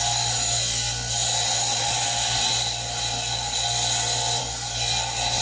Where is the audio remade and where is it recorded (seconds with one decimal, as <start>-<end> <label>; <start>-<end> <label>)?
0.0-5.4 recorded